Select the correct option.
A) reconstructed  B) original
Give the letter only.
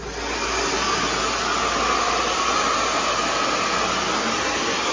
B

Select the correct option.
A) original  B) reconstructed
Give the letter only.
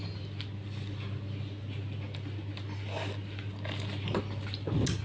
A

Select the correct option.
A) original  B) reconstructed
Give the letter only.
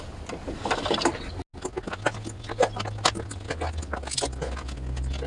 A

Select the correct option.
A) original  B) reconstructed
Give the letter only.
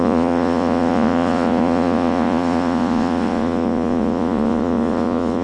B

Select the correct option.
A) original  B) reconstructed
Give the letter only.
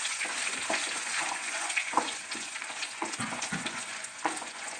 B